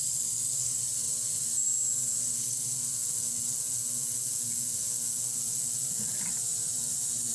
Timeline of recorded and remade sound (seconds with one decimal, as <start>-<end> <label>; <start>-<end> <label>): 0.0-3.0 remade; 3.0-6.3 recorded; 6.3-7.3 remade